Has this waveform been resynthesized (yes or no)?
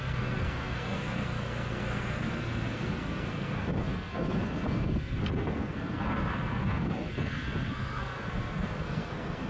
yes